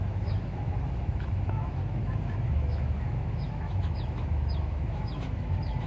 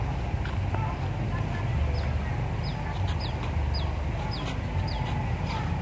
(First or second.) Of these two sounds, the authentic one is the second